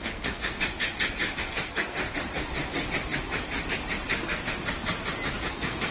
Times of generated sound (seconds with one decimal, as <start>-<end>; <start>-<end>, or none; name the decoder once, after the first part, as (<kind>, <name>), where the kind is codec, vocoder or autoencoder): 0.0-0.6 (codec, SNAC); 1.4-2.0; 5.5-5.9